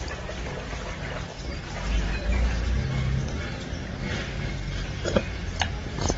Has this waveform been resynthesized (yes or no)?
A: no